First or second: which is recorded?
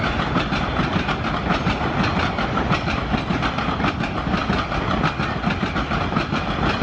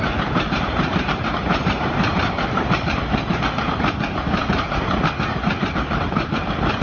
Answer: first